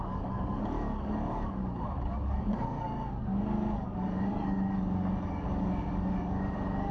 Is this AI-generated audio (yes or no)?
yes